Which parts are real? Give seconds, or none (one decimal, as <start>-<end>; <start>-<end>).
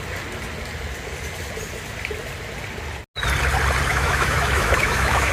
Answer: 0.0-3.9